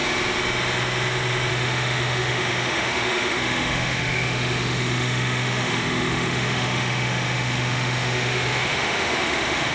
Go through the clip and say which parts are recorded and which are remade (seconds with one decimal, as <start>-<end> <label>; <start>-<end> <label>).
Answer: 0.0-1.5 recorded; 1.5-9.7 remade